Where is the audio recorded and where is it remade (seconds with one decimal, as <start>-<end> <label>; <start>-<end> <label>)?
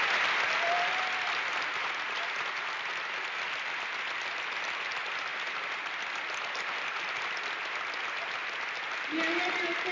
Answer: 0.0-9.9 recorded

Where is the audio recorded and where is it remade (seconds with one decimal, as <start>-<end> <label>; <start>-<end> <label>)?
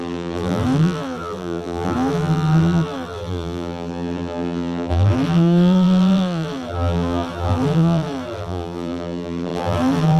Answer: 0.0-10.2 remade